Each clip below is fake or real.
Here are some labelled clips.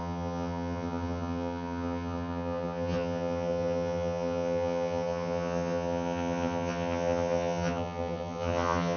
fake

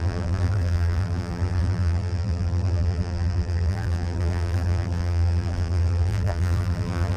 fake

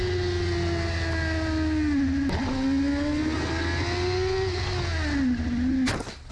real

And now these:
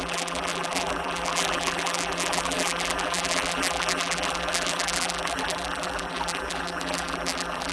fake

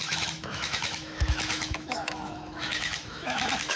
fake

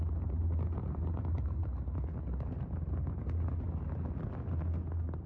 real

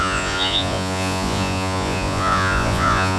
fake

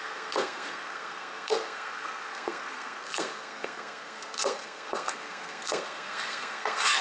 fake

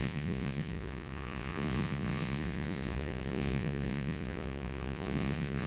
fake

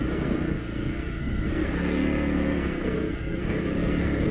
fake